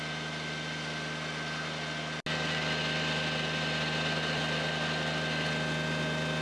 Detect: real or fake real